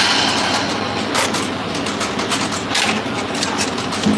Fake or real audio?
real